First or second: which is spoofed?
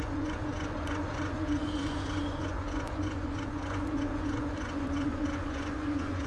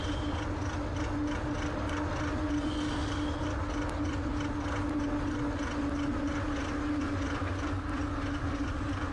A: first